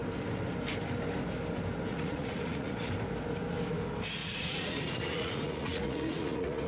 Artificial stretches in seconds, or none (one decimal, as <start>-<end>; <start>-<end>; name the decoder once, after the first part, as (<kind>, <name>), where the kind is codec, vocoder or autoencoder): 1.9-2.9 (vocoder, Vocos); 4.2-6.7